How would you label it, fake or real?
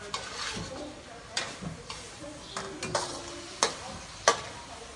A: real